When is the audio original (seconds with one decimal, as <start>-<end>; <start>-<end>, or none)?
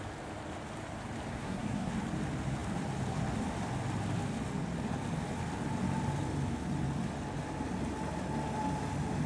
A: 0.0-1.3; 1.9-9.3